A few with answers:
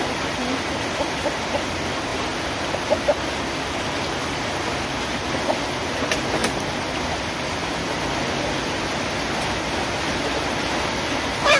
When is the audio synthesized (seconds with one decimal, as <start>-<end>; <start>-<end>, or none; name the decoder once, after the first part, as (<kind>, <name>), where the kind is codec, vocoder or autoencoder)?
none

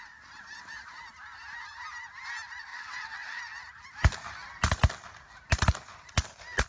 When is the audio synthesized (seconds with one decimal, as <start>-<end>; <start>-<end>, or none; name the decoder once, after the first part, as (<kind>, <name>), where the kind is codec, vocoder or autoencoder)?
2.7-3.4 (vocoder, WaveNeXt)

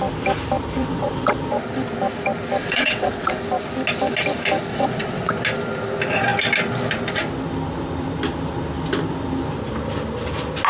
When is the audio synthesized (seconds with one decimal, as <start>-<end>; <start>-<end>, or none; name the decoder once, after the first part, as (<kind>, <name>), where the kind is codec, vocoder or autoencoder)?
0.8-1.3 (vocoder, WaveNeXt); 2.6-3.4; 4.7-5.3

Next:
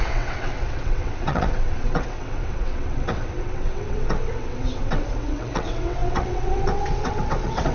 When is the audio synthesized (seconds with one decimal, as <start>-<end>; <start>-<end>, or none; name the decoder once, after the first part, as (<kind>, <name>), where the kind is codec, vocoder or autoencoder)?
0.0-7.7 (vocoder, WaveNeXt)